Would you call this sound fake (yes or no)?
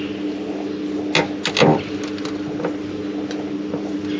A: no